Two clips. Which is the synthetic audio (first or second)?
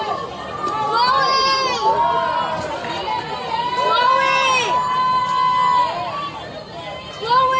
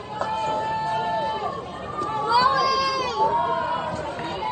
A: second